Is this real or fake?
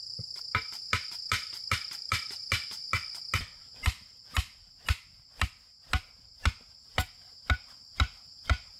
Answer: real